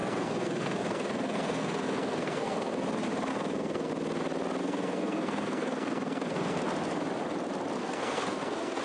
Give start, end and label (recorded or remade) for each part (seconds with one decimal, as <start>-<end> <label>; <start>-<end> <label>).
0.0-2.7 remade; 2.7-3.3 recorded; 3.3-3.9 remade; 3.9-4.6 recorded; 4.6-6.6 remade; 6.6-7.8 recorded; 7.8-8.8 remade